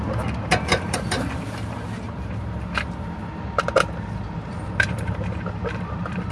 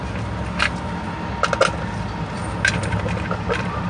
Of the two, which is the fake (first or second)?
first